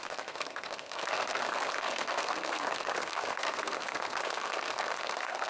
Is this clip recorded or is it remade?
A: remade